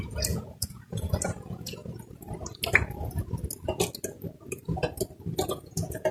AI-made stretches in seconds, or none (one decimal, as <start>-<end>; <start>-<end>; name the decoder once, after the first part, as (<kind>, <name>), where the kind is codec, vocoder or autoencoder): 0.0-1.8 (vocoder, Vocos); 5.5-6.1